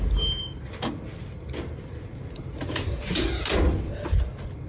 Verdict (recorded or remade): recorded